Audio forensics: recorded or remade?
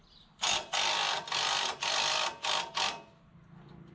recorded